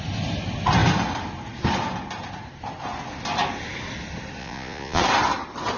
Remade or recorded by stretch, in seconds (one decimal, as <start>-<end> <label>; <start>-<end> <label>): 0.0-4.4 recorded; 4.4-5.0 remade; 5.0-5.8 recorded